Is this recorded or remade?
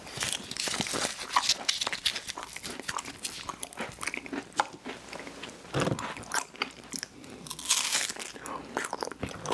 recorded